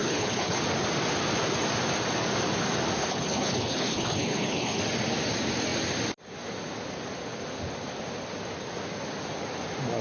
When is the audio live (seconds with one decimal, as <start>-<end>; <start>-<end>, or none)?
0.6-3.0; 4.8-10.0

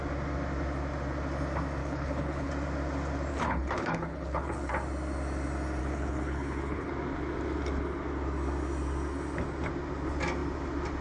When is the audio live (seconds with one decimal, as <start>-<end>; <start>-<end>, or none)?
0.0-1.8; 2.5-3.3; 4.7-5.8; 6.9-11.0

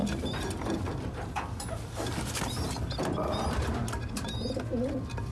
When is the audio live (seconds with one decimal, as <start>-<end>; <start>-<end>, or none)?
0.0-5.3

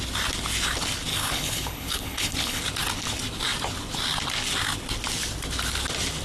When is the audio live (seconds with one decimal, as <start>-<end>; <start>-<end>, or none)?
0.0-1.1; 2.6-6.2

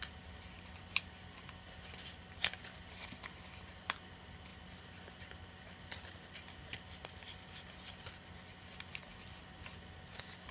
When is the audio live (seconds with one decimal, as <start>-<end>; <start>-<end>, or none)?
0.0-10.5

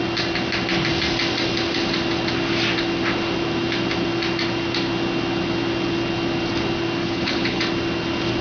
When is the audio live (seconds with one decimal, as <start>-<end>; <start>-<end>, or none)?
0.0-7.0; 7.6-8.4

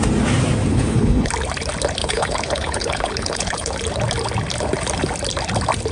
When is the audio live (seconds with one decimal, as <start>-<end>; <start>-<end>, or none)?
0.0-0.7; 1.3-2.0; 3.7-5.9

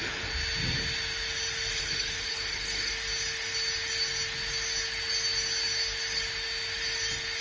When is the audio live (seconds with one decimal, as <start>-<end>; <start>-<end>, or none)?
0.0-1.7; 2.9-7.4